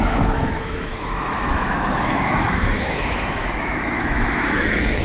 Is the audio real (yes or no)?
no